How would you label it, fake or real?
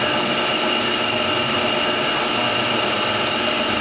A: real